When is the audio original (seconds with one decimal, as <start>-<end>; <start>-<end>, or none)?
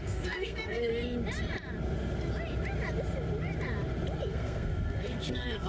0.9-4.3